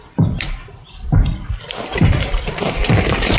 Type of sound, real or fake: fake